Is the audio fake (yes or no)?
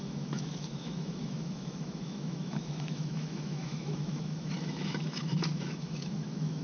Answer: yes